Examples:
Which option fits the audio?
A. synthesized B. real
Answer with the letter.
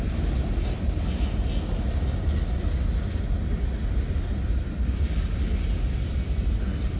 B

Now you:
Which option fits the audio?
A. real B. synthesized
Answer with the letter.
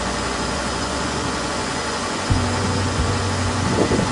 B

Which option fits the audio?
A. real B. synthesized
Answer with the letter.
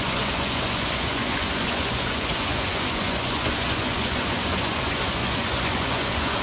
B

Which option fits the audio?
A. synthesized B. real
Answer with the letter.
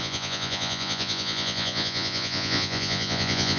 A